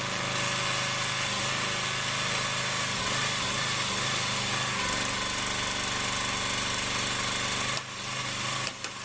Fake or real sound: real